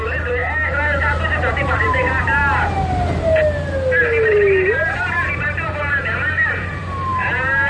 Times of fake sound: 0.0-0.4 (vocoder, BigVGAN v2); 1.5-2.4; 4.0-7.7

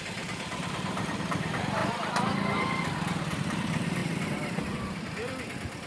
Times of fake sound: 0.0-1.8 (vocoder, BigVGAN v2); 3.4-4.0

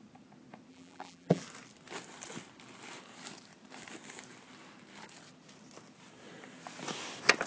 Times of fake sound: 0.7-1.4 (vocoder, BigVGAN v2)

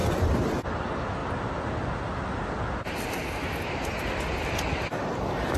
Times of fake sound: none

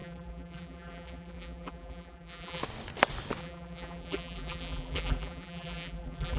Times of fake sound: 0.0-2.6 (vocoder, BigVGAN v2); 3.4-6.4

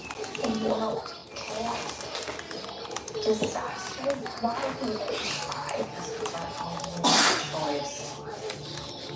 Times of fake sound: none

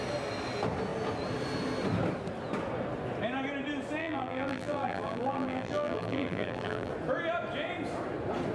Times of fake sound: 4.0-6.9 (vocoder, BigVGAN v2)